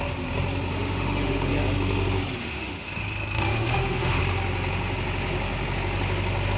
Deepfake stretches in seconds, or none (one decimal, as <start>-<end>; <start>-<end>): 0.7-1.5; 2.4-4.2